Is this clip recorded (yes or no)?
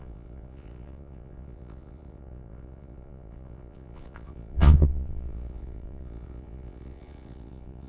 no